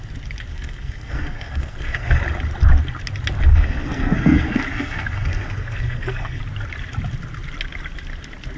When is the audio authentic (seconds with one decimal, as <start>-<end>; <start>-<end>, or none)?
0.0-0.5; 2.2-3.5; 6.4-8.6